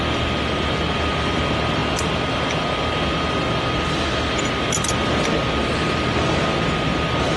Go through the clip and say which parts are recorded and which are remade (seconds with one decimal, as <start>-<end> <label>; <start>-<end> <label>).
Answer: 0.0-7.4 recorded